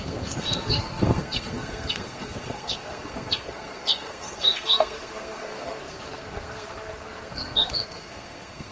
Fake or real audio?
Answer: fake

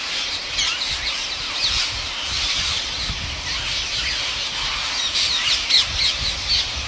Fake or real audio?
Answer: real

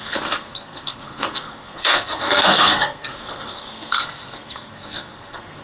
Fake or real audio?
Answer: fake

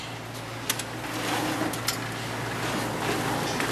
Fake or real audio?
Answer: real